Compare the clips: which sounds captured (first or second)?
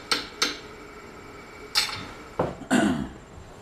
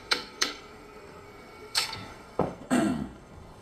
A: first